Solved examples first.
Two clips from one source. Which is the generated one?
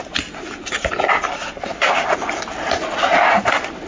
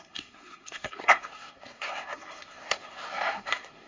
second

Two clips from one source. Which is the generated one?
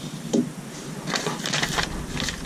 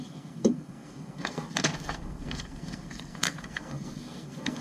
second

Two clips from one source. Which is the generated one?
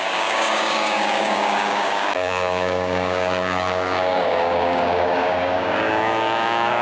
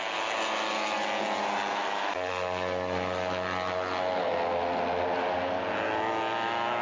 first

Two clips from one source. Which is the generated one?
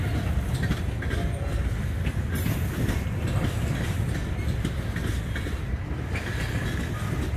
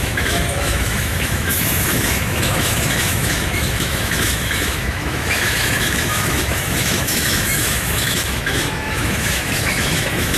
second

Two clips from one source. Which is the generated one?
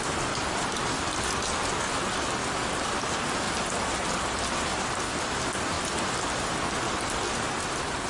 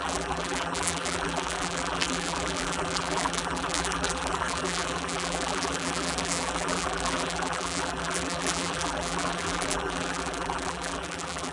second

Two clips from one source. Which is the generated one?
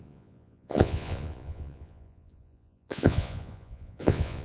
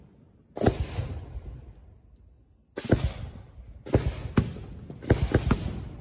first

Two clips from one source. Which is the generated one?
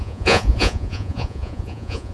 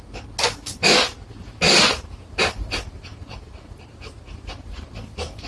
first